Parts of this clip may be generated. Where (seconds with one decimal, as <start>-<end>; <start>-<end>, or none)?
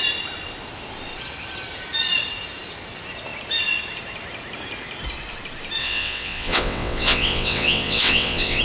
5.8-8.6